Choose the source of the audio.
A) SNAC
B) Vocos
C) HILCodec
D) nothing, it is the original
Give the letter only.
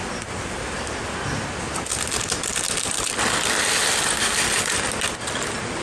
D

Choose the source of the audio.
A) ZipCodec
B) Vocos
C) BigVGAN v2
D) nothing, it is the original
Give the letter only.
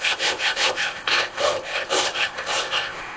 A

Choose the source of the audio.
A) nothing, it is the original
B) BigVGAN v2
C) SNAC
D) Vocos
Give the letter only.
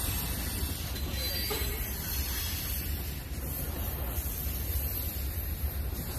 A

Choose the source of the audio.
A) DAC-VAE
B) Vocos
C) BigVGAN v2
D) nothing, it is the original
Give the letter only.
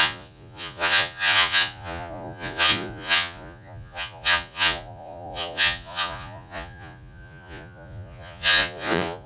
B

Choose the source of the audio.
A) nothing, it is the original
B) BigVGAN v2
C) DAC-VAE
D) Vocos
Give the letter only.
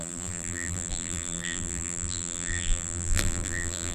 B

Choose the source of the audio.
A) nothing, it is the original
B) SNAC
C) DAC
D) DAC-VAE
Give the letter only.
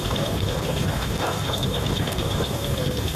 C